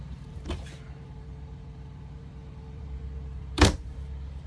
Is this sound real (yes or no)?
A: no